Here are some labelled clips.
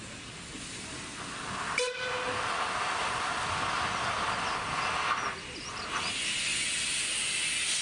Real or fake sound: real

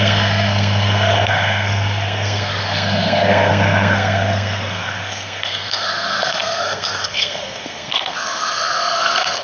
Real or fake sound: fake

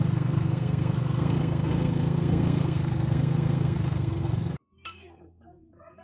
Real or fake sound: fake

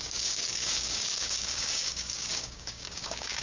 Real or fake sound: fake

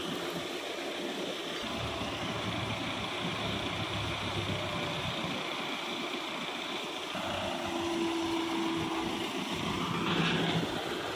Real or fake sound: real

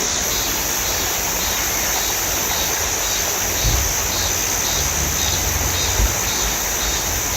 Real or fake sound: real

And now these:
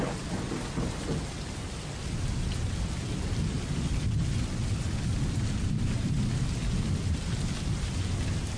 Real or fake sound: real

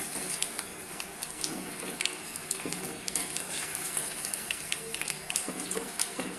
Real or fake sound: fake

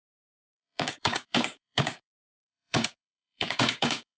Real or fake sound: fake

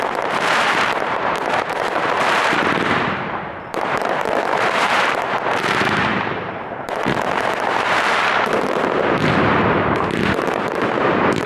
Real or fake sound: fake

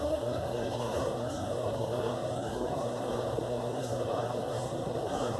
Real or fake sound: fake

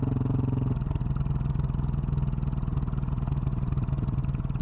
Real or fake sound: real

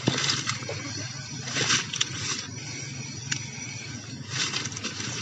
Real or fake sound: real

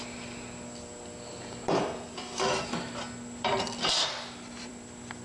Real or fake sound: fake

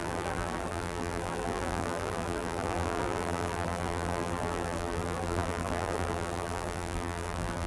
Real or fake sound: fake